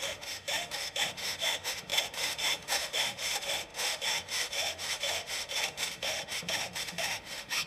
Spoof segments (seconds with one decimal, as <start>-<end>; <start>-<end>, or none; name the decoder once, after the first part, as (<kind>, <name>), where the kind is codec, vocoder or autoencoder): 0.0-7.7 (autoencoder, DAC-VAE)